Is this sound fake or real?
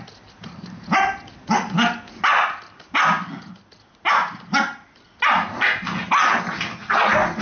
real